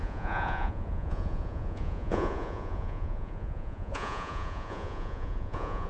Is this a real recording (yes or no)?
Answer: no